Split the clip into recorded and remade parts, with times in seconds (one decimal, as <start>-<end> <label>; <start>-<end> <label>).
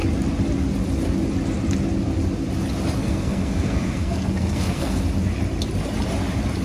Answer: 0.0-3.0 recorded; 3.0-5.0 remade; 5.0-6.6 recorded